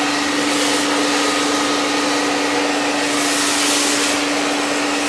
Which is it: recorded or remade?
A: recorded